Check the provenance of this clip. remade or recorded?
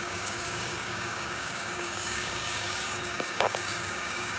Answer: remade